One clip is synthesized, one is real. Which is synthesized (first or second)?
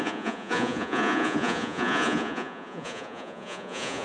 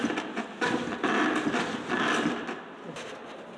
first